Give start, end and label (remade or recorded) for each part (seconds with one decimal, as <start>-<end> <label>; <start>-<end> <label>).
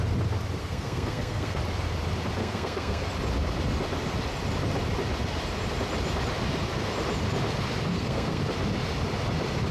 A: 0.0-0.6 recorded; 0.6-1.6 remade; 1.6-2.4 recorded; 2.4-3.1 remade; 3.1-7.9 recorded; 7.9-8.4 remade; 8.4-9.7 recorded